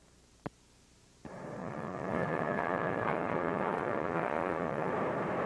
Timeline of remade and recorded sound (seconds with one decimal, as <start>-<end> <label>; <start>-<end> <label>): 0.0-1.6 recorded; 1.6-4.9 remade; 4.9-5.5 recorded